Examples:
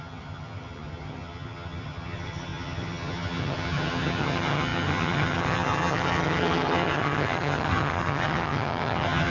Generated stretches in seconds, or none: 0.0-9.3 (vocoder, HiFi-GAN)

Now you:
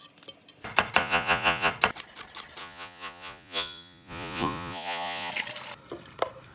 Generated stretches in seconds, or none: 1.0-1.7 (vocoder, Vocos); 2.6-5.3

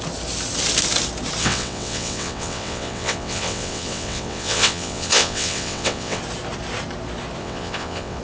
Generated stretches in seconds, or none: 1.4-6.2 (vocoder, WaveNeXt); 7.4-8.2

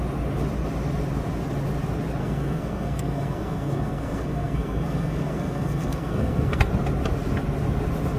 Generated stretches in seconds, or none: 2.2-6.7 (codec, SNAC)

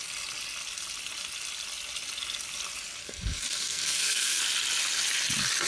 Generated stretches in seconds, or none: 3.0-4.4 (codec, SNAC)